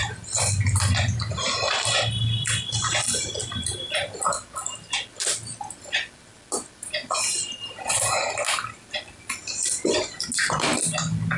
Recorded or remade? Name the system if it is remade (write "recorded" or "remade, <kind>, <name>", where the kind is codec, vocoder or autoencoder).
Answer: recorded